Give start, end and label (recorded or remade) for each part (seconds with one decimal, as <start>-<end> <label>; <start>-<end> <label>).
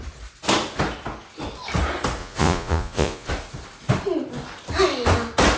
0.0-2.2 recorded; 2.2-3.3 remade; 3.3-5.6 recorded